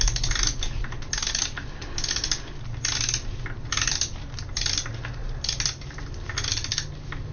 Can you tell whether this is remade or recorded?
recorded